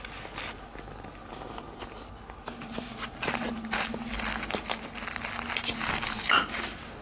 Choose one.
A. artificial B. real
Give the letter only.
B